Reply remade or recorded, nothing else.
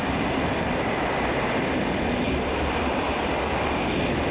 recorded